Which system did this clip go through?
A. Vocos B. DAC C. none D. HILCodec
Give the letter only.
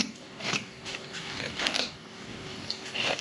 B